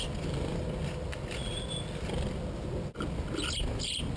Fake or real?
real